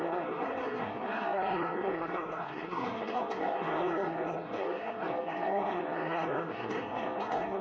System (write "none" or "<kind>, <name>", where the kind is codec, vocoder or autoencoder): codec, SNAC